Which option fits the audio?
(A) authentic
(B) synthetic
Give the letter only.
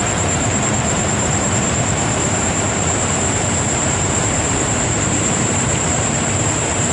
B